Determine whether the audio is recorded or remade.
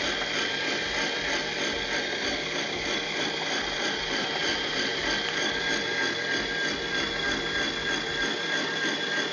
remade